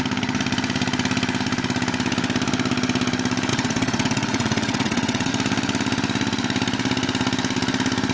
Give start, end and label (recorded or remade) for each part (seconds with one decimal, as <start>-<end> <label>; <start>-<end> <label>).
0.0-3.5 recorded; 3.5-5.3 remade; 5.3-8.1 recorded